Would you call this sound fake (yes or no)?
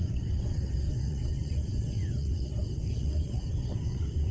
yes